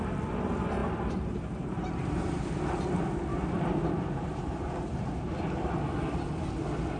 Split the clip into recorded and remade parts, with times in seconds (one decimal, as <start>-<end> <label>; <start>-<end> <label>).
0.0-0.8 recorded; 0.8-2.4 remade; 2.4-3.3 recorded; 3.3-5.3 remade; 5.3-7.0 recorded